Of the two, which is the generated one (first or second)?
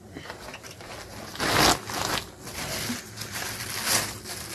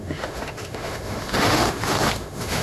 second